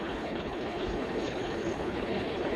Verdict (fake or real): fake